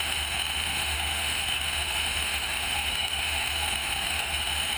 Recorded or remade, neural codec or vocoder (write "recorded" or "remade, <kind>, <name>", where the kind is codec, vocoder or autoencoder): remade, autoencoder, DAC-VAE